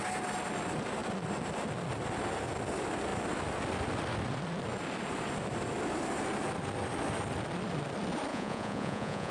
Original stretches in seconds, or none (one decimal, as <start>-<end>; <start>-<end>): 0.0-8.3